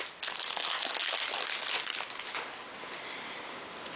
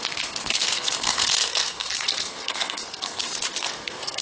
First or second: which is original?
first